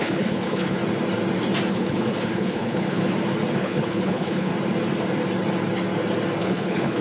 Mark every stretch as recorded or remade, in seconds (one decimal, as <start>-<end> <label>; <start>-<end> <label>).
0.0-0.8 remade; 0.8-1.7 recorded; 1.7-3.0 remade; 3.0-3.6 recorded; 3.6-4.5 remade; 4.5-6.4 recorded; 6.4-7.0 remade